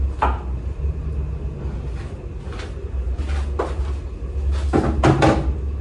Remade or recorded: recorded